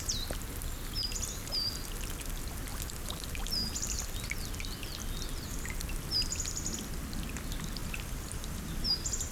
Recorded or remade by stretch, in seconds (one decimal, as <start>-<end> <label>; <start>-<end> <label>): 0.0-2.7 recorded; 2.7-4.0 remade; 4.0-7.8 recorded; 7.8-8.9 remade; 8.9-9.3 recorded